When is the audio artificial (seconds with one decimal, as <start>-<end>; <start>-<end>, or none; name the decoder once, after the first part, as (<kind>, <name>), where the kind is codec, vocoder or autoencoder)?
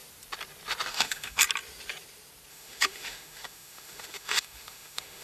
0.9-1.4 (autoencoder, DAC-VAE); 2.5-5.2